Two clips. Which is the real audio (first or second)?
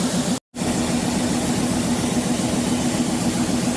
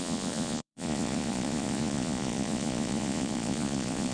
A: first